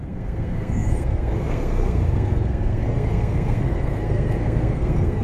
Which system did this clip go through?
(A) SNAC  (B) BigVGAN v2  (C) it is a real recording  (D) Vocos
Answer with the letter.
A